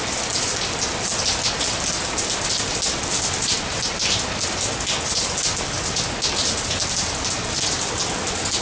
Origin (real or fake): real